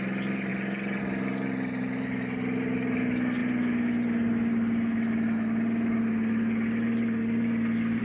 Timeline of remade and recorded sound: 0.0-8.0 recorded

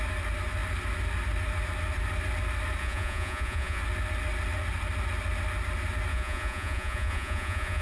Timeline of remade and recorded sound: 0.0-2.8 recorded; 2.8-3.8 remade; 3.8-6.1 recorded; 6.1-7.8 remade